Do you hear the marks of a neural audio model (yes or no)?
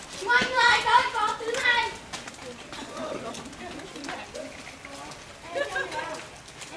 no